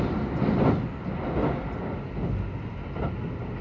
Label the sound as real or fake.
real